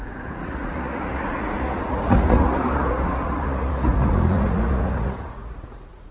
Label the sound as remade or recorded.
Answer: remade